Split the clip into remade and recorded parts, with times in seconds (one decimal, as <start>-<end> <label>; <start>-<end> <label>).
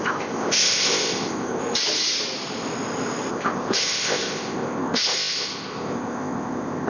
0.0-1.6 remade; 1.6-3.3 recorded; 3.3-6.9 remade